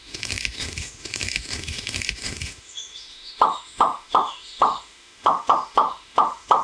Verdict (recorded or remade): remade